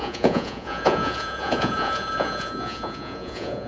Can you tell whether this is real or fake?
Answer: fake